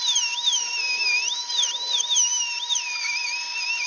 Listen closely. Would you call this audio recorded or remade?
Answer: recorded